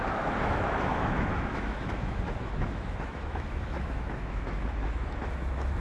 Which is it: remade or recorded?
remade